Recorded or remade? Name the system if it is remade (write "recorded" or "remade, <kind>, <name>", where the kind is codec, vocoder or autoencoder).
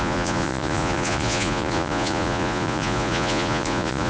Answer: remade, vocoder, Vocos